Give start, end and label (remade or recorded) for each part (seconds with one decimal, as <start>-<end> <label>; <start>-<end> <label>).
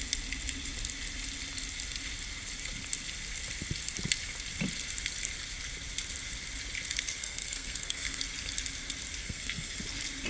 0.0-7.2 recorded; 7.2-8.2 remade; 8.2-9.2 recorded; 9.2-9.8 remade; 9.8-10.3 recorded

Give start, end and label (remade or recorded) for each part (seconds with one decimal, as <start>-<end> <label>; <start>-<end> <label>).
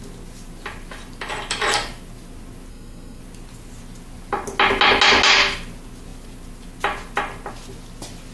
0.0-2.7 recorded; 2.7-3.2 remade; 3.2-8.3 recorded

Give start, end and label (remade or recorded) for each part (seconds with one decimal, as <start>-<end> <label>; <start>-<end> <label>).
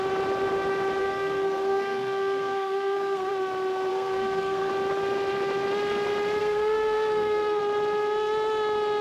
0.0-1.0 recorded; 1.0-3.3 remade; 3.3-3.9 recorded; 3.9-4.7 remade; 4.7-6.4 recorded; 6.4-7.6 remade; 7.6-9.0 recorded